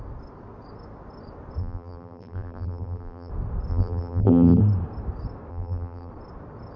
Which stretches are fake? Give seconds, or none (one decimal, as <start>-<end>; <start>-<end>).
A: 1.6-3.3; 3.7-4.6; 5.5-6.1